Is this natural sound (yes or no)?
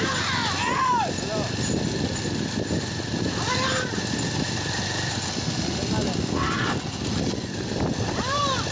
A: yes